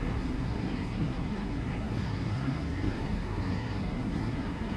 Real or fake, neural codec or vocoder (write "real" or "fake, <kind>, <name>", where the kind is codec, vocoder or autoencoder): fake, codec, SNAC